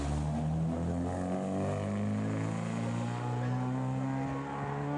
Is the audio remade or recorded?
recorded